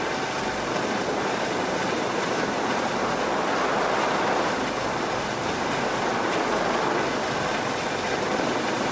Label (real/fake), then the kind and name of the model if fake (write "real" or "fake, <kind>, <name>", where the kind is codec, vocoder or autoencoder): real